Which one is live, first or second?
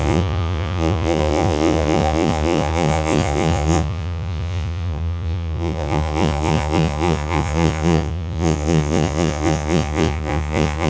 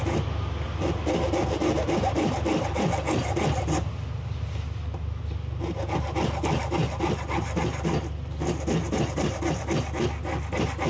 second